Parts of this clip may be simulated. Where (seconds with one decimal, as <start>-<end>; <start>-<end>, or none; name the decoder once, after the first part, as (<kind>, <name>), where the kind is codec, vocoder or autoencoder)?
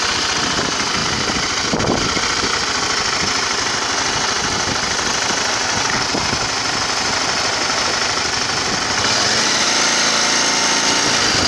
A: none